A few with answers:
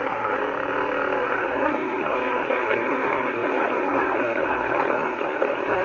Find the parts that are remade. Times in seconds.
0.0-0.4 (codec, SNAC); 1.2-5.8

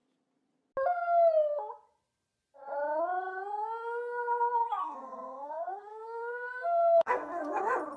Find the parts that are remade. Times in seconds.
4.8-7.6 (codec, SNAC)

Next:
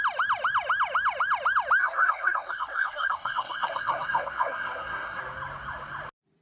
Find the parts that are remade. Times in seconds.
1.8-5.2 (codec, SNAC)

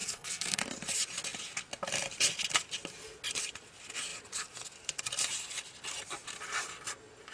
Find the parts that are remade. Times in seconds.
0.0-0.6 (codec, SNAC)